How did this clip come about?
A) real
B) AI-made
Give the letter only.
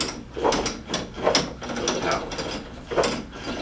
A